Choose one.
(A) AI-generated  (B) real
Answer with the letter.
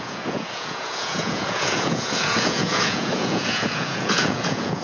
A